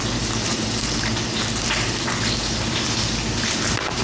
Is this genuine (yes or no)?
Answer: yes